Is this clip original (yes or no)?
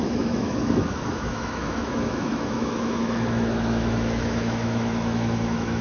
no